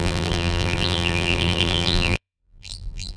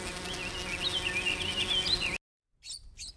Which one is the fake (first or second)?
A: first